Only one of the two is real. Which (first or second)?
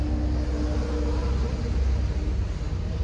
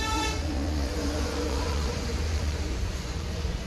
first